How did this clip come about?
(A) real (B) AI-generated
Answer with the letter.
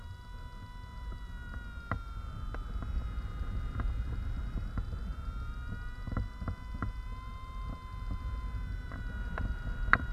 A